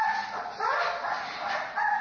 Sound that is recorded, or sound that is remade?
recorded